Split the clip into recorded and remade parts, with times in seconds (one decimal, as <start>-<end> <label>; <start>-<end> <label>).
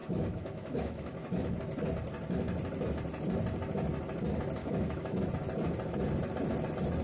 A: 0.0-1.6 remade; 1.6-4.6 recorded; 4.6-5.3 remade; 5.3-7.0 recorded